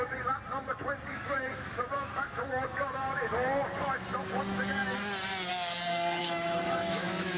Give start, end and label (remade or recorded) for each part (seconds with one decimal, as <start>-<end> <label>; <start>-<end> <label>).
0.0-1.1 recorded; 1.1-3.3 remade; 3.3-6.2 recorded; 6.2-7.4 remade